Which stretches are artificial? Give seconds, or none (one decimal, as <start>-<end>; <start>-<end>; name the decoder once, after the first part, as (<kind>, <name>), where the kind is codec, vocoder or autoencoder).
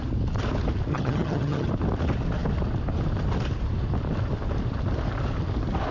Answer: 0.9-1.7 (vocoder, HiFi-GAN)